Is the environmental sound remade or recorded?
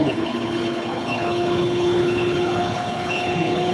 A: remade